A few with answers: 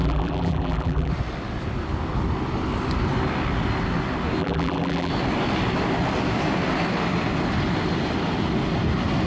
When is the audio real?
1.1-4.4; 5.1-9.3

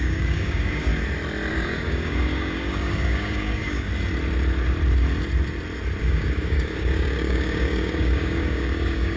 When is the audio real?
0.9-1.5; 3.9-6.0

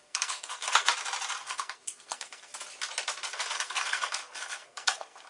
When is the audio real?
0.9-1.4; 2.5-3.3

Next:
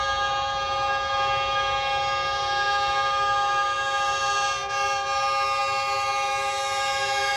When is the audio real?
0.0-7.4

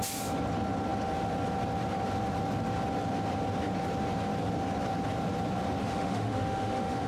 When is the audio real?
0.0-5.8

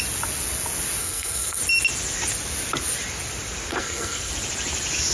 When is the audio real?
0.0-1.0; 1.6-3.7; 4.3-5.1

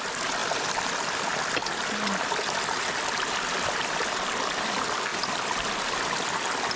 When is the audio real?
0.0-5.1; 6.0-6.8